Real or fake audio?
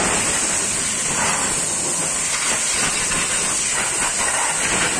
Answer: real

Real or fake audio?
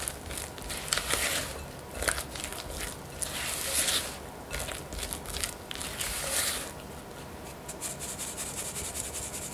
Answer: real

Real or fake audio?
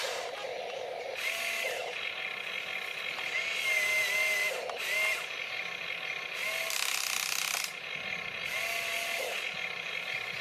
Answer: real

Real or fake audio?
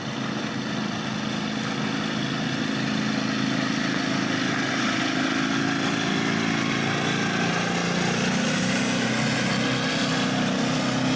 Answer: real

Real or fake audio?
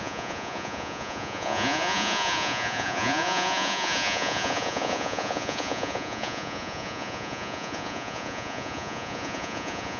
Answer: fake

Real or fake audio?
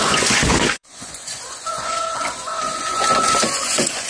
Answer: fake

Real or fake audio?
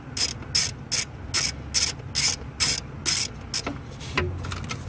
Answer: real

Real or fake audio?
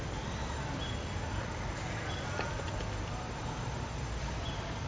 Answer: real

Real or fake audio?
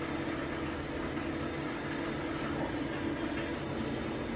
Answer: real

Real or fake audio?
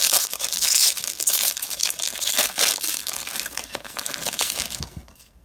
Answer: fake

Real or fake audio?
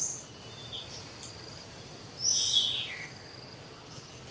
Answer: real